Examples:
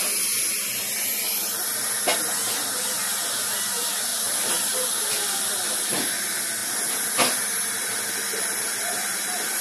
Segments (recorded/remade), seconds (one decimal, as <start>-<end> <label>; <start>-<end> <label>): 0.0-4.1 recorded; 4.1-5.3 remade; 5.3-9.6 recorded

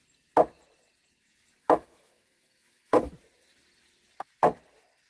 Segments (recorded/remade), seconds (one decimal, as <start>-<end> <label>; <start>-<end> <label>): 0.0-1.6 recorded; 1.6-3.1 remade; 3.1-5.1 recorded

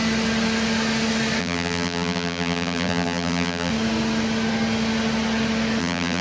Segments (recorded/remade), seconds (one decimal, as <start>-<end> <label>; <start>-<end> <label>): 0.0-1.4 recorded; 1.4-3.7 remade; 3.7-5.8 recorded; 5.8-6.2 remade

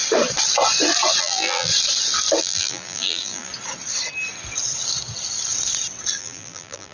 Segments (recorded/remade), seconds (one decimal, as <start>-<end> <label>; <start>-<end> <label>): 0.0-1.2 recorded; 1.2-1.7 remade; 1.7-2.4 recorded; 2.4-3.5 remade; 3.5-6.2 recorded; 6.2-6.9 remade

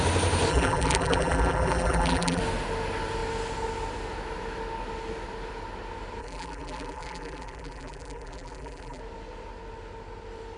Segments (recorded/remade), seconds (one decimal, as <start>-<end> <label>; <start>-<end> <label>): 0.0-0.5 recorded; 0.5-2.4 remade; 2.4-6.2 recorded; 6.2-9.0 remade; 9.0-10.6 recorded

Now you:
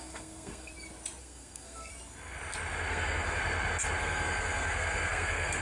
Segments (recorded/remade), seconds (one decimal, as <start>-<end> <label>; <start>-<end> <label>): 0.0-0.7 remade; 0.7-1.2 recorded; 1.2-1.9 remade; 1.9-2.9 recorded; 2.9-3.4 remade; 3.4-4.0 recorded; 4.0-5.6 remade